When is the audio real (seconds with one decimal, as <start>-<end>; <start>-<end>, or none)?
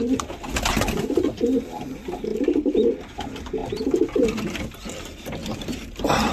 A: 0.0-5.4